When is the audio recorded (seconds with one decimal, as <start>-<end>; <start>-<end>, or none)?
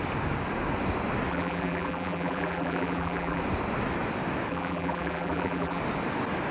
0.0-1.3; 3.4-4.5; 5.8-6.5